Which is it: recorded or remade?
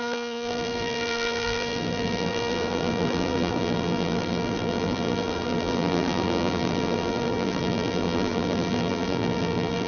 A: remade